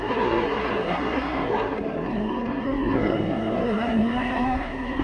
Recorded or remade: remade